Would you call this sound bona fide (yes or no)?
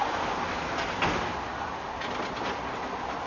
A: yes